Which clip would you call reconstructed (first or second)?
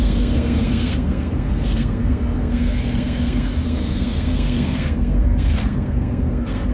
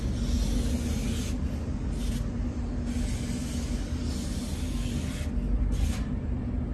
first